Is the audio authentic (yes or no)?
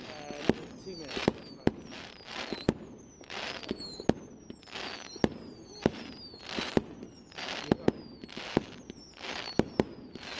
yes